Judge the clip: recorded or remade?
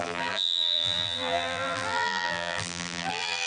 remade